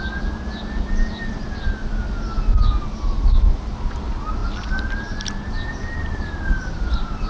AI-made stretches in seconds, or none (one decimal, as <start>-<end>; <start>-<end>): none